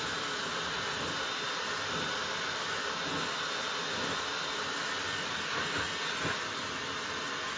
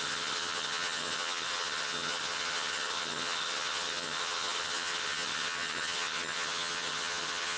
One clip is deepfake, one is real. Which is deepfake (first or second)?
second